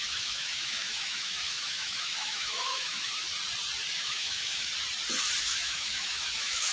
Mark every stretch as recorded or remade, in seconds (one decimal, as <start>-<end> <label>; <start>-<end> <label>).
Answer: 0.0-3.2 remade; 3.2-4.0 recorded; 4.0-4.7 remade; 4.7-5.4 recorded; 5.4-6.7 remade